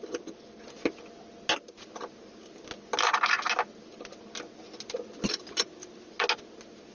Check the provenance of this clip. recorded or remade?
recorded